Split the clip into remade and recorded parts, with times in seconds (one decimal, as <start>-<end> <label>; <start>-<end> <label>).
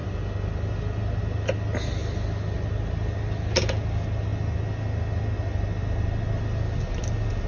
0.0-7.5 recorded